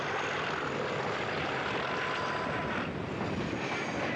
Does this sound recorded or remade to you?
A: recorded